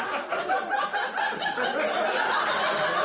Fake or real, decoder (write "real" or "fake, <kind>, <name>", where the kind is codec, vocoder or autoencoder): real